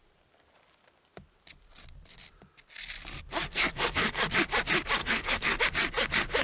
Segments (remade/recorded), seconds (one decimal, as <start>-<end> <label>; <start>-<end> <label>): 0.0-3.5 recorded; 3.5-4.2 remade; 4.2-5.0 recorded; 5.0-5.6 remade; 5.6-6.4 recorded